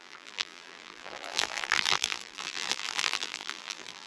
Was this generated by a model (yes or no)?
yes